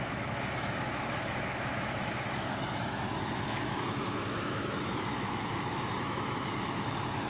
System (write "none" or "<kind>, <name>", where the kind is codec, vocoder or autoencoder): autoencoder, DAC-VAE